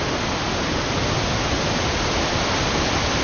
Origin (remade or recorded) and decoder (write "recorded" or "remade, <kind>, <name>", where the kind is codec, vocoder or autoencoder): recorded